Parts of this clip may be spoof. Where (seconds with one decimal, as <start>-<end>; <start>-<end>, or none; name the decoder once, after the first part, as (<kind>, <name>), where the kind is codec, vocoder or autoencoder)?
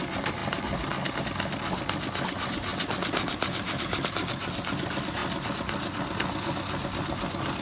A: none